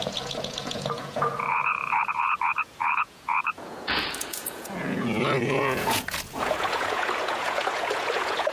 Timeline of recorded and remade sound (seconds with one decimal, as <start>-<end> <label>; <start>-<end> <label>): 0.0-8.5 remade